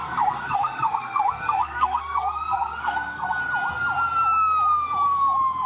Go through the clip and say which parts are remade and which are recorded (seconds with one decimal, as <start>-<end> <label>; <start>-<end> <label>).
0.0-3.4 remade; 3.4-5.7 recorded